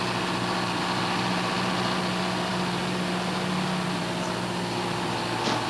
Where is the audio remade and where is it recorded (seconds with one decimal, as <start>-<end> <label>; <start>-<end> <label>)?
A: 0.0-5.7 recorded